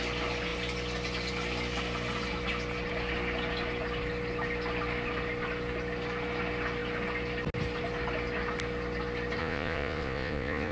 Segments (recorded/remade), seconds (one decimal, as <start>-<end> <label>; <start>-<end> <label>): 0.0-9.4 recorded; 9.4-10.7 remade